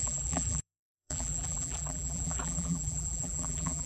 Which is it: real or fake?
fake